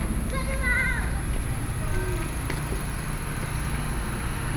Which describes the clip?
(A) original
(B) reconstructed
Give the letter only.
A